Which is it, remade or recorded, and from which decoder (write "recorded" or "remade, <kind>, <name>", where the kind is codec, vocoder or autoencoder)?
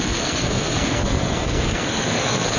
remade, codec, SNAC